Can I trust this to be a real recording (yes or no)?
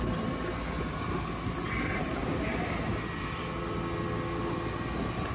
yes